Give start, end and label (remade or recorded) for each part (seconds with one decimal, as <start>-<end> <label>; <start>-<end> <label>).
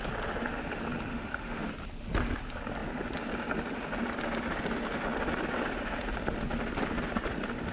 0.0-1.1 recorded; 1.1-1.7 remade; 1.7-7.7 recorded